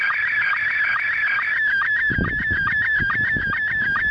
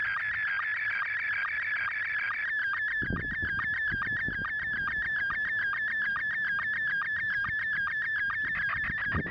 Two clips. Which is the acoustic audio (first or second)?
second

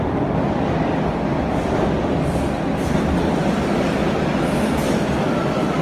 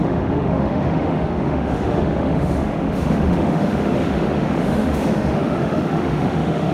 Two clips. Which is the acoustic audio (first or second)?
first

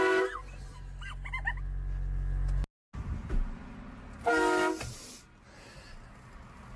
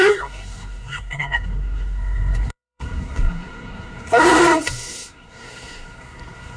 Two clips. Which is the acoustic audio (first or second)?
first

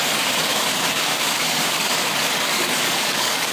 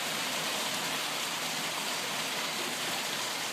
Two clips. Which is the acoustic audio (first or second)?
second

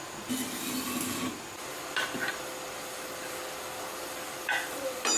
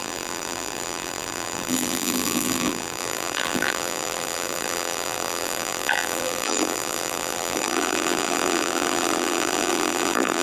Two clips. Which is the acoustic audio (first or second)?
first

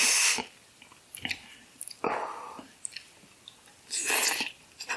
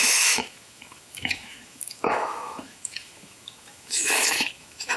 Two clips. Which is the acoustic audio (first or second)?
first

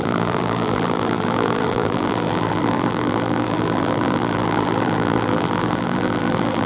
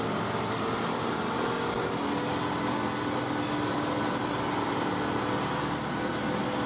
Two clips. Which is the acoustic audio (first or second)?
second